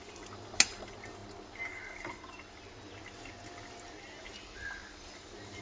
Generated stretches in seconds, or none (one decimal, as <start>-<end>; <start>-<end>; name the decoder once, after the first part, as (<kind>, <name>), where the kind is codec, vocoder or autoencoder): none